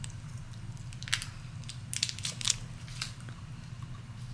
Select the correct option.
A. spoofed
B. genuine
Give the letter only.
B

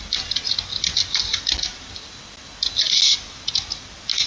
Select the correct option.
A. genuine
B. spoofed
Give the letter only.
A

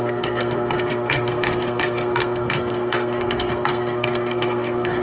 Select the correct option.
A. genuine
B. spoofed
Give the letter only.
B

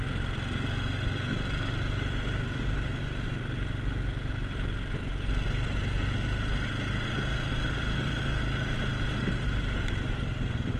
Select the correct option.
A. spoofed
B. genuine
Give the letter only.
B